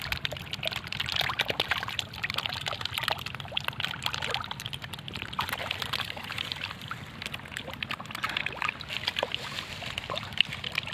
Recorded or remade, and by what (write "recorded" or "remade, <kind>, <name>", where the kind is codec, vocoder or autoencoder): recorded